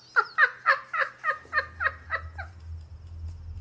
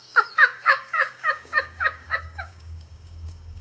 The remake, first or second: second